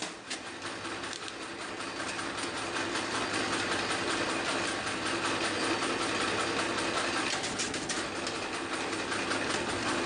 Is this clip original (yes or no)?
yes